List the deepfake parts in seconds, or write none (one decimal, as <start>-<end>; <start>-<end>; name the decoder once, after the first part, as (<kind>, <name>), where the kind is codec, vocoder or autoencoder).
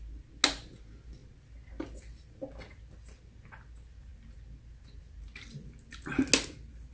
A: none